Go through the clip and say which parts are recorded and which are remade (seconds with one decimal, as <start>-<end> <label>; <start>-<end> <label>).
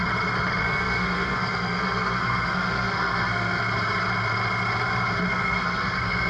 0.0-0.6 recorded; 0.6-3.6 remade; 3.6-5.3 recorded; 5.3-6.3 remade